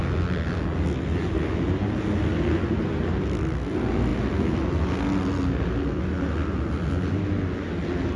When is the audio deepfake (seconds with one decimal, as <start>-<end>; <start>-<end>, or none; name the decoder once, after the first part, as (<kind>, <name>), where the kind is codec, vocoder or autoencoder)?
none